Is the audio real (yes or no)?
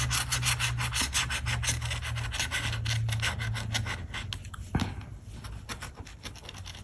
yes